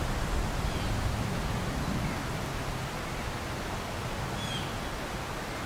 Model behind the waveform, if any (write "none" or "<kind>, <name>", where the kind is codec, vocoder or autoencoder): none